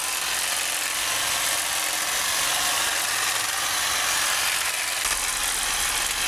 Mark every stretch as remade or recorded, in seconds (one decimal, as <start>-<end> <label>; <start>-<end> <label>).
0.0-6.3 recorded